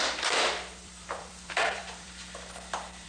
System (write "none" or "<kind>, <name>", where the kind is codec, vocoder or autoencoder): vocoder, BigVGAN v2